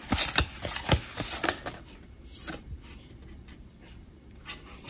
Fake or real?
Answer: fake